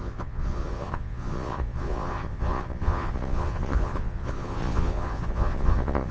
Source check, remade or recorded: remade